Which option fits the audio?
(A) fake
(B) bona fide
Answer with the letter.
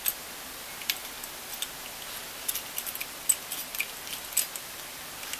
B